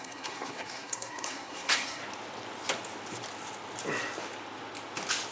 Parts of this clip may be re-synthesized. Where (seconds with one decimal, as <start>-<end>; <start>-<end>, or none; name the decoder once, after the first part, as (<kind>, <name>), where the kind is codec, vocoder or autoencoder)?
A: 0.0-2.0 (codec, SNAC)